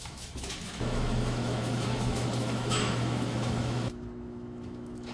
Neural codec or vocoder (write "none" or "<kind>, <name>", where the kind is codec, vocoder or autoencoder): autoencoder, DAC-VAE